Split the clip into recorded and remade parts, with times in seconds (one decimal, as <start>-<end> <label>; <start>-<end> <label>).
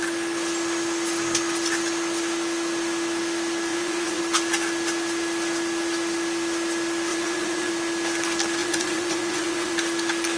0.0-3.7 recorded; 3.7-4.2 remade; 4.2-7.1 recorded; 7.1-7.7 remade; 7.7-8.6 recorded; 8.6-9.7 remade; 9.7-10.4 recorded